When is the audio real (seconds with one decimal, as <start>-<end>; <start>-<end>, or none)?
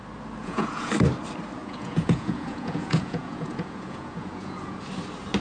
0.0-0.4; 0.9-1.6; 4.8-5.4